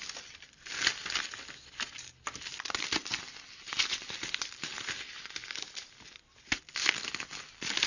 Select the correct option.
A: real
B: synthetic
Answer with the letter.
A